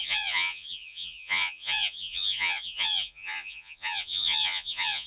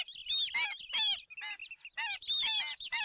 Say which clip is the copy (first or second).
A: first